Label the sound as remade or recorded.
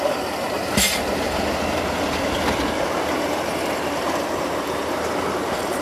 remade